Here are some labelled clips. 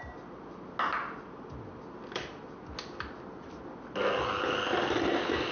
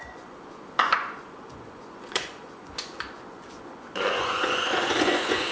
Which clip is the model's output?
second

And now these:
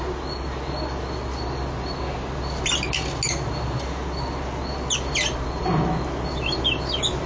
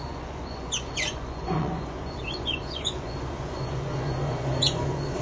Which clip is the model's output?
second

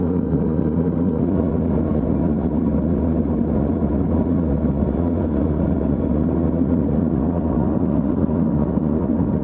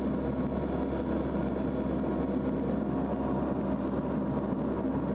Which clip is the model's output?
first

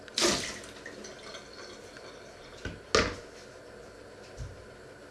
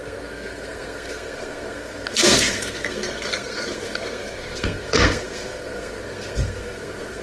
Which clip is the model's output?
second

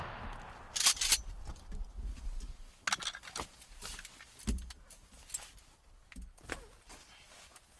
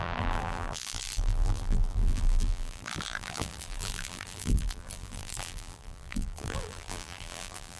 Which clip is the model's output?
second